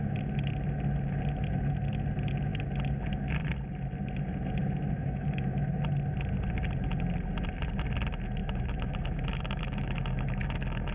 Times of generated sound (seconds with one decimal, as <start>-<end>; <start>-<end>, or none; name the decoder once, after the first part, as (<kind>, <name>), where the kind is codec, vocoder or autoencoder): 5.0-5.6 (autoencoder, DAC-VAE); 8.4-10.9